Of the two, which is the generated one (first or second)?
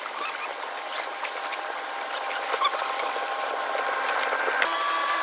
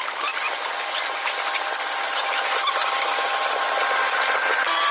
first